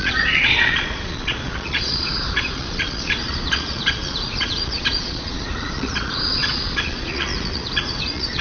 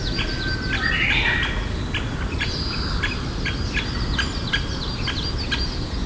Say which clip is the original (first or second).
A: second